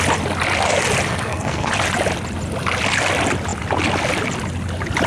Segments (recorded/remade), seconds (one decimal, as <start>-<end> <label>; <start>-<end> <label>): 0.0-1.1 recorded; 1.1-1.7 remade; 1.7-5.1 recorded

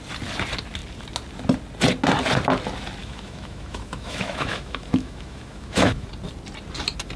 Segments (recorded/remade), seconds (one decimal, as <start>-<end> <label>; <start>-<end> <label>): 0.0-3.0 recorded; 3.0-6.1 remade; 6.1-7.2 recorded

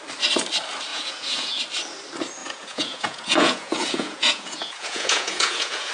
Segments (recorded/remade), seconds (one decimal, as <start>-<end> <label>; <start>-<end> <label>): 0.0-0.9 recorded; 0.9-1.6 remade; 1.6-2.4 recorded; 2.4-5.9 remade

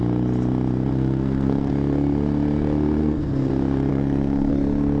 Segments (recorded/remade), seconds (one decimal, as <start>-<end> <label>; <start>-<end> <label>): 0.0-0.9 recorded; 0.9-1.7 remade; 1.7-3.0 recorded; 3.0-3.5 remade; 3.5-3.9 recorded; 3.9-4.5 remade; 4.5-5.0 recorded

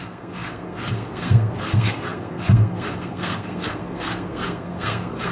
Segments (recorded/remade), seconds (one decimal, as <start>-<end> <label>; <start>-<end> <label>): 0.0-5.3 remade